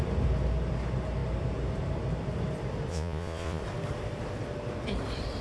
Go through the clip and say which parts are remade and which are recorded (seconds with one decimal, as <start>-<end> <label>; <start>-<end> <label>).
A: 0.0-2.9 recorded; 2.9-3.6 remade; 3.6-5.4 recorded